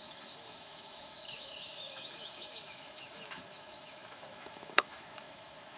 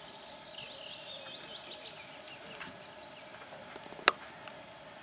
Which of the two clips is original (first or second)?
second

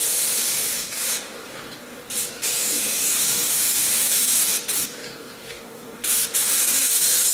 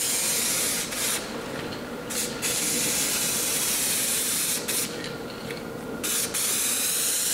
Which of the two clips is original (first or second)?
second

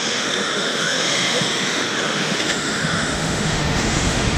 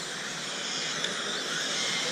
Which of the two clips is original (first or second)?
second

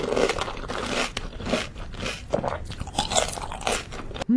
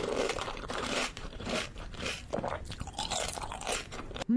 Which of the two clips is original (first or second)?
first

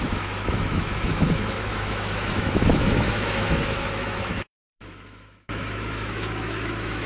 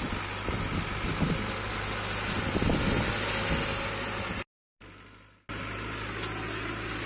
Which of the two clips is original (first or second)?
second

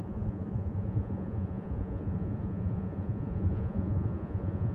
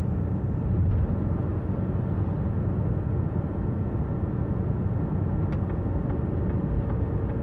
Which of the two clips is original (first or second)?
second